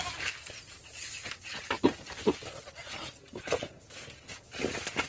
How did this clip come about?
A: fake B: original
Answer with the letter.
B